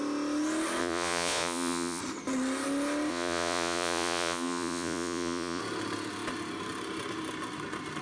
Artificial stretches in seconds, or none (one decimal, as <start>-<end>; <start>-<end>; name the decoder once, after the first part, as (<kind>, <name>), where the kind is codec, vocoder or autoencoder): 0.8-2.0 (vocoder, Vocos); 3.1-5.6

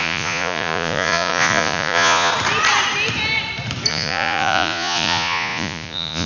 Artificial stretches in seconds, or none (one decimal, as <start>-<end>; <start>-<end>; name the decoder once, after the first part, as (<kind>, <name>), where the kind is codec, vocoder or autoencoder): 0.0-2.3 (vocoder, Vocos); 3.9-6.3

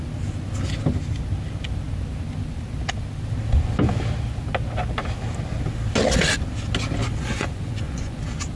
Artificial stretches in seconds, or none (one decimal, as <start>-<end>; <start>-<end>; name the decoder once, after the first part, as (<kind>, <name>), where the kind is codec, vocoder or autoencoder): 7.0-8.2 (vocoder, Vocos)

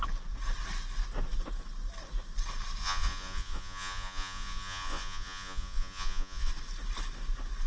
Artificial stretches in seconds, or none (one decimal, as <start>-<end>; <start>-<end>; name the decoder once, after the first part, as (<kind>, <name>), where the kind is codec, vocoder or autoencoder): 2.8-6.5 (vocoder, Vocos)